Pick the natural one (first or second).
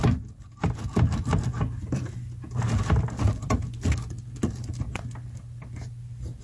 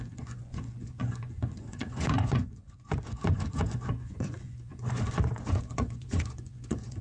first